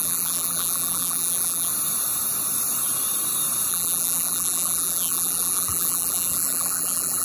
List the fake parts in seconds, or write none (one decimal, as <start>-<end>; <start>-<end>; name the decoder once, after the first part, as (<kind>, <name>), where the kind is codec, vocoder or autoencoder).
0.0-1.7 (vocoder, BigVGAN v2); 3.7-7.2